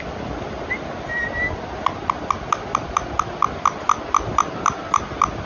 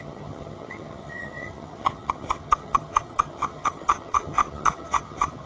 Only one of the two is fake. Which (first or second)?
second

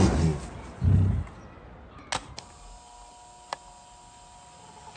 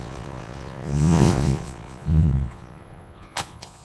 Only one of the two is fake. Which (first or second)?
second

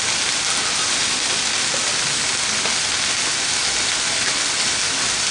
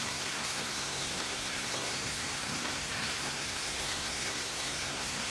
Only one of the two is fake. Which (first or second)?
second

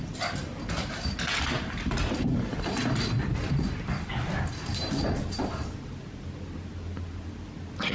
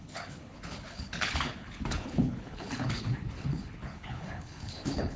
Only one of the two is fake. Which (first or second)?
second